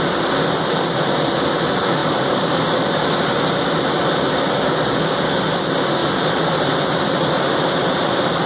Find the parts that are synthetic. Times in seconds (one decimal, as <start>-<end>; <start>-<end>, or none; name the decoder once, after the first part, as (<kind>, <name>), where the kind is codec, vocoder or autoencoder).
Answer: 2.0-4.0 (vocoder, BigVGAN v2); 6.0-8.5